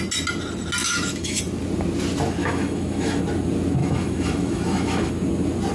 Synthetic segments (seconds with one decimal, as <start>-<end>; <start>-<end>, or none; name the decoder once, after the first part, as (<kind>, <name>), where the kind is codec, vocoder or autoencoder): 0.8-1.4 (autoencoder, DAC-VAE); 2.4-3.2; 3.8-5.1